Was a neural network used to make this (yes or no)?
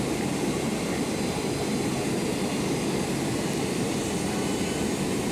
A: no